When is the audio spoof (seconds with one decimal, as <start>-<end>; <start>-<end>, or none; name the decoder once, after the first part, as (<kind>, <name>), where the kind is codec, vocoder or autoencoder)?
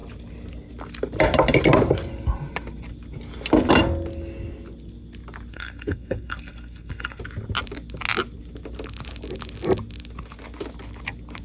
5.5-7.2 (codec, SNAC)